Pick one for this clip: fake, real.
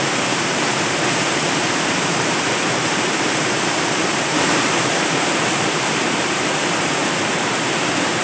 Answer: fake